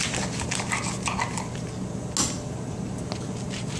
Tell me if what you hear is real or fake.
real